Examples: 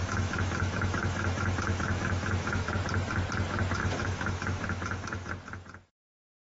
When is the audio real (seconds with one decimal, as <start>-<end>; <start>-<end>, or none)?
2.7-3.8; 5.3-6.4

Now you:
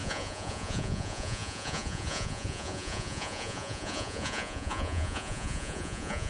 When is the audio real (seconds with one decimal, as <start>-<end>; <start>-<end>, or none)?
none

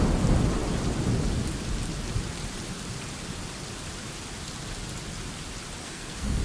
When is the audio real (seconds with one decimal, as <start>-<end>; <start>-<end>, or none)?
0.0-5.8

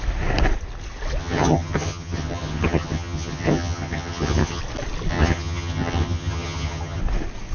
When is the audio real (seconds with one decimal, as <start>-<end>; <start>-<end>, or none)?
0.0-1.2; 4.6-5.1; 7.0-7.5